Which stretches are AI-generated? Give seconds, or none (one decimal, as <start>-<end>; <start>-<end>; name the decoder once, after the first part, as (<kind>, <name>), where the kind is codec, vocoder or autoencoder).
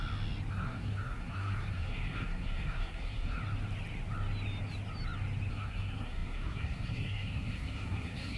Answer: 0.5-3.4 (codec, SNAC); 5.5-8.4